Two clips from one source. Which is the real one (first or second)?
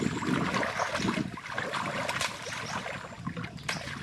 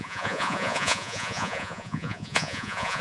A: first